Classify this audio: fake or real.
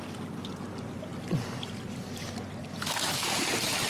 real